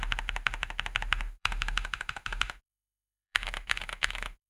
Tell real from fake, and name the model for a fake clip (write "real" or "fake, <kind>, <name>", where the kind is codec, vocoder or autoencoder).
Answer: fake, autoencoder, DAC-VAE